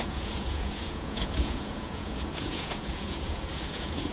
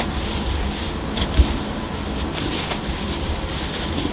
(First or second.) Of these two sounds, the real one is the second